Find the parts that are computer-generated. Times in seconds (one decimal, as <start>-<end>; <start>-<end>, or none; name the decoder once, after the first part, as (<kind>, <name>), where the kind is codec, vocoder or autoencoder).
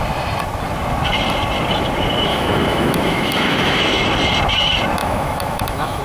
2.3-3.8 (autoencoder, DAC-VAE); 5.0-6.0